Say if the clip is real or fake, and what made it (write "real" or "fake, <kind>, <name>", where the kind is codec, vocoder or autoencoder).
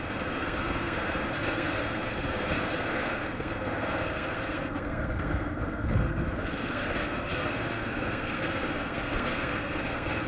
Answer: fake, codec, SNAC